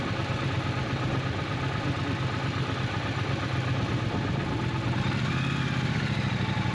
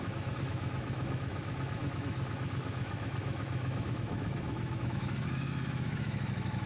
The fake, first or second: second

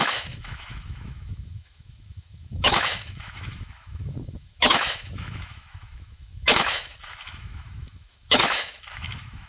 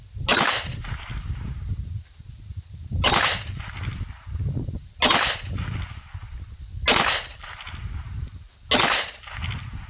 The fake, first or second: first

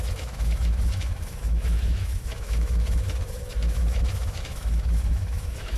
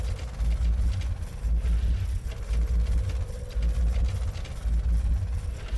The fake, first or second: first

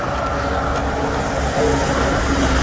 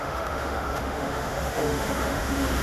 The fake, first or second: second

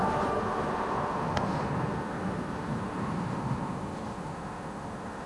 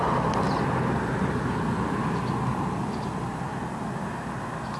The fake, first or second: first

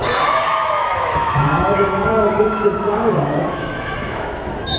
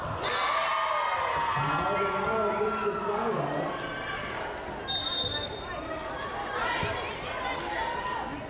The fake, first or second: first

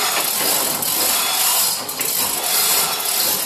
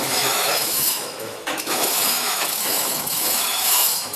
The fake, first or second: second